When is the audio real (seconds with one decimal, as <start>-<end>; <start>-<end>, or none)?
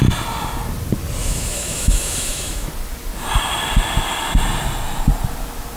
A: 0.0-1.2; 2.7-5.8